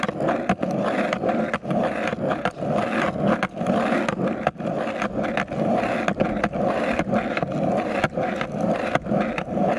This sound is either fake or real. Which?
real